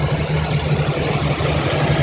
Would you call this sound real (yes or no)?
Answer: yes